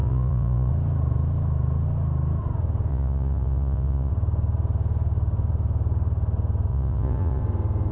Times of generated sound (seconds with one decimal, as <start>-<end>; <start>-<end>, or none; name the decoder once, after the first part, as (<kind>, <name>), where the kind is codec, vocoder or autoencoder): 0.0-0.7 (vocoder, Vocos); 2.9-4.1; 6.7-7.4